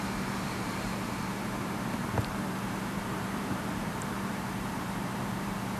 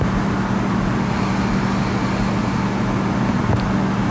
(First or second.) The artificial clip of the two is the first